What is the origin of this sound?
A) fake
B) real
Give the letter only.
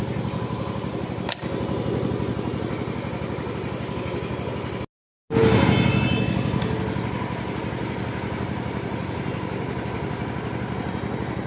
B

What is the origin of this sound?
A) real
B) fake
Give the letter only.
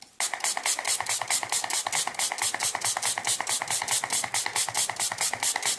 A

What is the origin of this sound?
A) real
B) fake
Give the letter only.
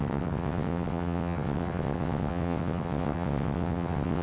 B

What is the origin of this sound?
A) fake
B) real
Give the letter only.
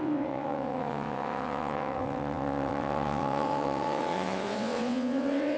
A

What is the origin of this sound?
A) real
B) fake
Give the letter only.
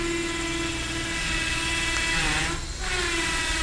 A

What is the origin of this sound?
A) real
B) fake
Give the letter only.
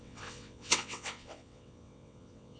B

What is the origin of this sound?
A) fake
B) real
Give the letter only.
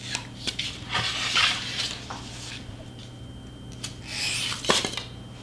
B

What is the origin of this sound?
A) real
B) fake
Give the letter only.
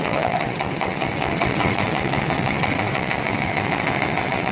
B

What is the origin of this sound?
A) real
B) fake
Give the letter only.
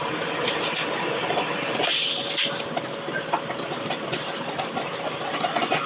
A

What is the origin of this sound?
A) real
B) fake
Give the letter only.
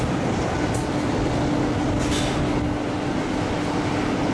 A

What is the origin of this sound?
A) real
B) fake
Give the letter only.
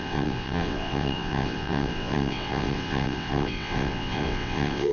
B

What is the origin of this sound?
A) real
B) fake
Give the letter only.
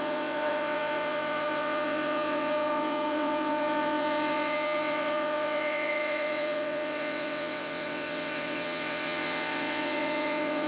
B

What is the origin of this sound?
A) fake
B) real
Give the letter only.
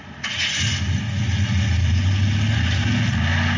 B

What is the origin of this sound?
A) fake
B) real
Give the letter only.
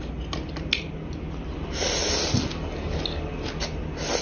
B